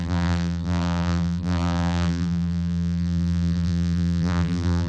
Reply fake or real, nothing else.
fake